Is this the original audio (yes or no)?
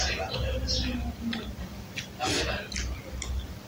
yes